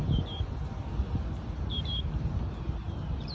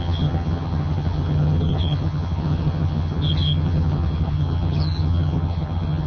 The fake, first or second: second